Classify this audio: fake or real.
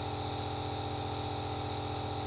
real